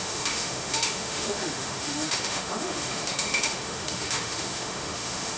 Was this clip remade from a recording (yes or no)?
yes